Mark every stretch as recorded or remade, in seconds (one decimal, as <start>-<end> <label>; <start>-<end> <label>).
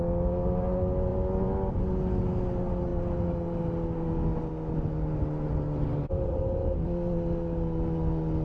0.0-8.4 recorded